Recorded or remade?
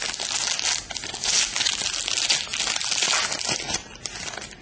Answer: recorded